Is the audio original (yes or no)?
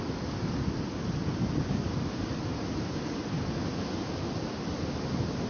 yes